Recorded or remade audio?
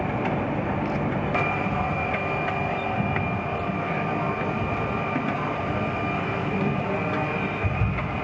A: recorded